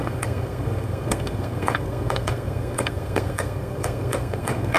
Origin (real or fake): fake